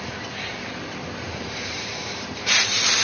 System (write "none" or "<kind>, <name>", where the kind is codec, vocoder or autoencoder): vocoder, BigVGAN v2